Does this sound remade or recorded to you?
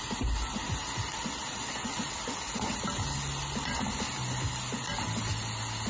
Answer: recorded